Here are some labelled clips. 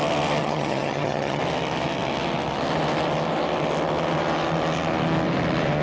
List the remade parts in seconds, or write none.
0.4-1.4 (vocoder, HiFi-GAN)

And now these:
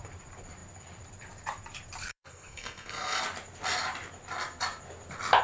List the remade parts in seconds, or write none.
2.1-3.2 (codec, SNAC)

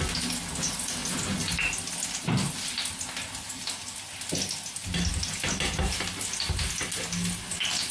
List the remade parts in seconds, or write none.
none

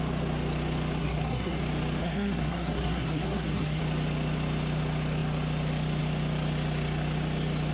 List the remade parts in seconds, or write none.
1.0-1.6 (codec, SNAC); 2.0-3.8

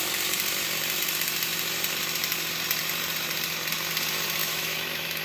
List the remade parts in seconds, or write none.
4.4-5.2 (autoencoder, DAC-VAE)